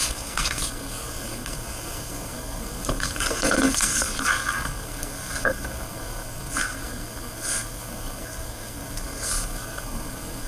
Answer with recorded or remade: remade